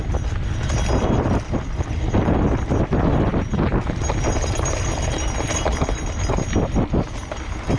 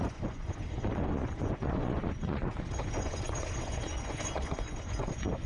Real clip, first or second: first